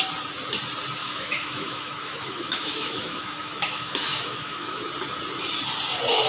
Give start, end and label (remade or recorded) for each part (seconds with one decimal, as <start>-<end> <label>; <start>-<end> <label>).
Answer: 0.0-1.0 recorded; 1.0-4.8 remade; 4.8-6.3 recorded